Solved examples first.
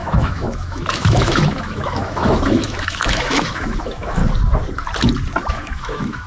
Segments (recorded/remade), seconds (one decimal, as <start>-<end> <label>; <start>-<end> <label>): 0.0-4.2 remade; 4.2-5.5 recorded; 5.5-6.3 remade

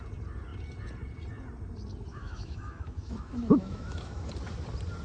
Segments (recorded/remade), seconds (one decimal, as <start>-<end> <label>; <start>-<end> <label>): 0.0-2.1 recorded; 2.1-4.3 remade; 4.3-5.0 recorded

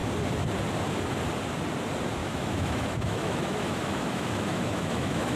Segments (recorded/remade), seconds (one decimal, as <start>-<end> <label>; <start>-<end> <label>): 0.0-2.2 recorded; 2.2-5.4 remade

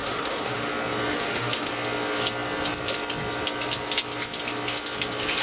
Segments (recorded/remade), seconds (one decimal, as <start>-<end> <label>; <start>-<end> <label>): 0.0-0.7 remade; 0.7-1.1 recorded; 1.1-1.7 remade; 1.7-5.4 recorded

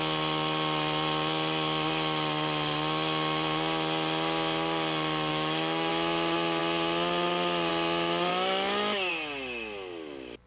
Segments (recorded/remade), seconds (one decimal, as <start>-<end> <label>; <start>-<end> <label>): 0.0-5.3 recorded; 5.3-5.9 remade; 5.9-8.3 recorded; 8.3-9.1 remade; 9.1-10.5 recorded

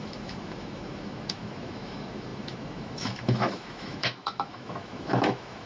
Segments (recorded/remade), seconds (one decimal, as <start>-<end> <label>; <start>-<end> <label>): 0.0-5.7 remade